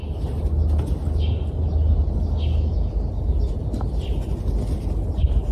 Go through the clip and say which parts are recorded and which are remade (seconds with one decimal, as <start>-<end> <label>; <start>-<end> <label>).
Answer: 0.0-5.5 recorded